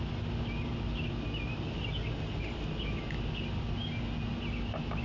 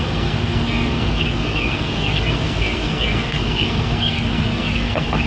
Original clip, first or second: first